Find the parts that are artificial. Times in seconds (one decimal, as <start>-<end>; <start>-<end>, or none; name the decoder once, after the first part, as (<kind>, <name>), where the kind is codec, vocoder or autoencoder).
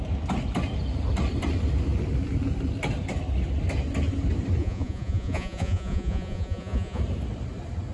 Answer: 4.6-7.0 (vocoder, Vocos)